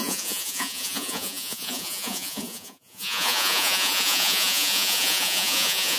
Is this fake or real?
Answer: fake